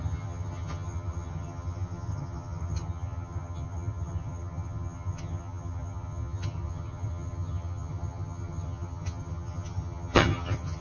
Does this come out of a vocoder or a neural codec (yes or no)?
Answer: yes